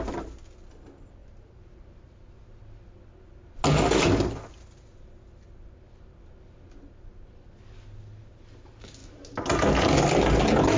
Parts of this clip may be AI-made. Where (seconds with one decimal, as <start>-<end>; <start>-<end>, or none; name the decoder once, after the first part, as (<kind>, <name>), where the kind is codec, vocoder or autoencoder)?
none